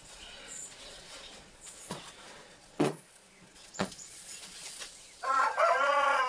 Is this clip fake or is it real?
fake